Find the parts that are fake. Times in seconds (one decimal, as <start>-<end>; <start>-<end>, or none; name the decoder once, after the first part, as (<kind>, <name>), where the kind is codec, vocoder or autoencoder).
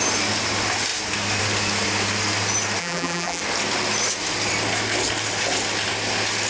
2.8-3.4 (vocoder, BigVGAN v2)